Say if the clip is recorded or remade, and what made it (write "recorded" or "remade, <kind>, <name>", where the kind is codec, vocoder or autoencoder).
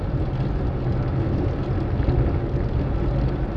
recorded